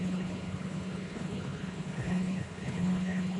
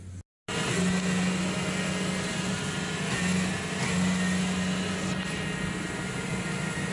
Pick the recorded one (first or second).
second